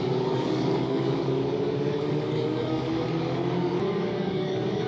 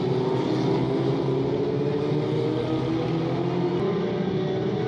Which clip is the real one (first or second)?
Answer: second